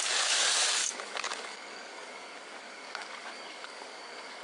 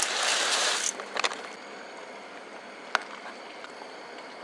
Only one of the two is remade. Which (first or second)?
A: first